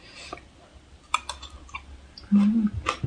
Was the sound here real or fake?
real